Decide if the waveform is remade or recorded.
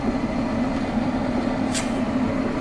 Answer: recorded